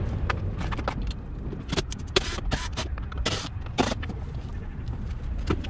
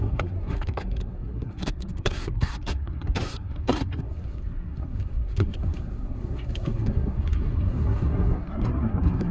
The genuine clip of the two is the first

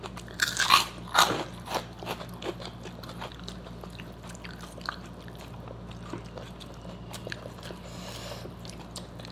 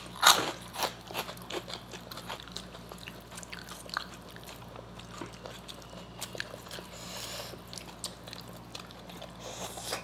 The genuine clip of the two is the second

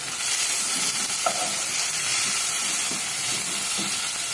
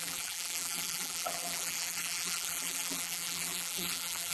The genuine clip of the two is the first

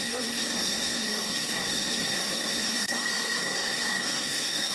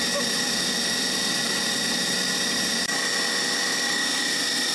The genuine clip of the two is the second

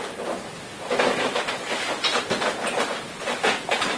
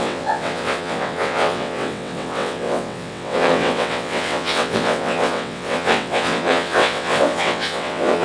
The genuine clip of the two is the first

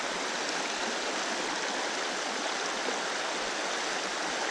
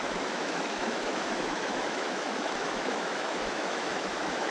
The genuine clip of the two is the first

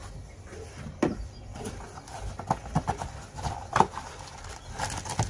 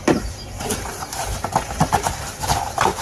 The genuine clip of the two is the first